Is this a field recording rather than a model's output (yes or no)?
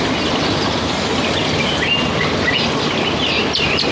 yes